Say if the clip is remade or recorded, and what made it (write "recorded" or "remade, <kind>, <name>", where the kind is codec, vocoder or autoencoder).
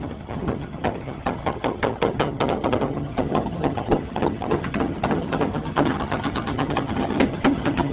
remade, vocoder, HiFi-GAN